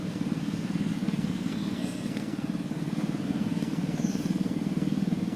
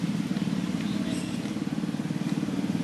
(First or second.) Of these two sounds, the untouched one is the second